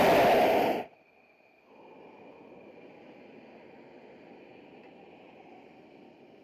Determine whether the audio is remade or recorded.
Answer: recorded